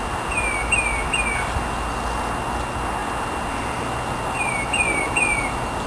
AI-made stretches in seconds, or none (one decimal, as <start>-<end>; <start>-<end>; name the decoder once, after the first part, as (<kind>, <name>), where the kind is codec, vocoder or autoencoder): none